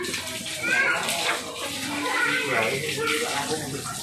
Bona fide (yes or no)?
yes